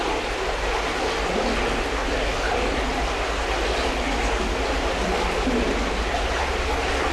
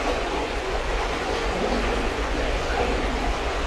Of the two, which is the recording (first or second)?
first